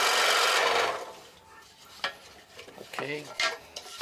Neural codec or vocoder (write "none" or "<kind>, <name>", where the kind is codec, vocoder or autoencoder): none